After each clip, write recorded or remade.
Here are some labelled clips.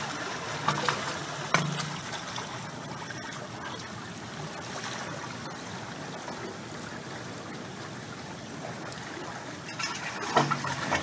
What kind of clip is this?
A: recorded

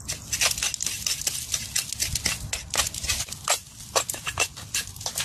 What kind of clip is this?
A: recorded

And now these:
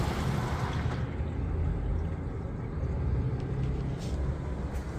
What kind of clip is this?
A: recorded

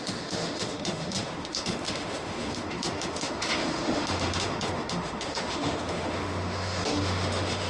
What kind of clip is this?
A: remade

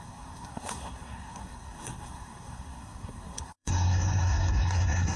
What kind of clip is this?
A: remade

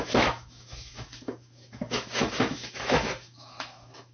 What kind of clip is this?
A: remade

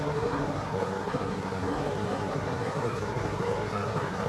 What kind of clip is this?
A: remade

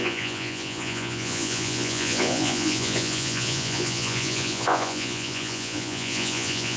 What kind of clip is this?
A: remade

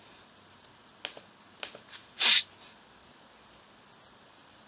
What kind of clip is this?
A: recorded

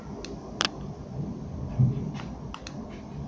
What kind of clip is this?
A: recorded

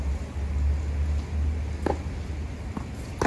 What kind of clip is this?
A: recorded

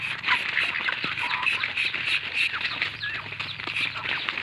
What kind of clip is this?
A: recorded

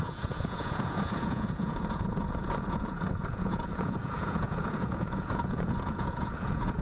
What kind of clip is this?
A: remade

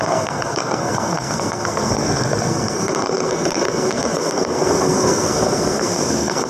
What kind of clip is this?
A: remade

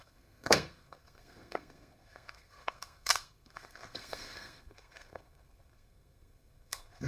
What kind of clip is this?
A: remade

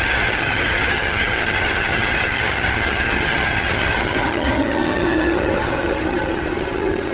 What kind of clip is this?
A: remade